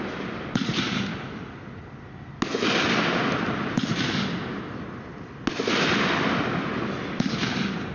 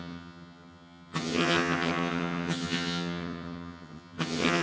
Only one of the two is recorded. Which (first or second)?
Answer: first